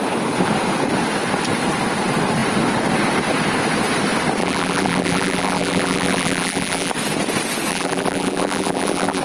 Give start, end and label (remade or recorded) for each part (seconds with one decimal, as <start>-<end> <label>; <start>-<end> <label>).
0.0-4.4 recorded; 4.4-6.9 remade; 6.9-7.7 recorded; 7.7-9.2 remade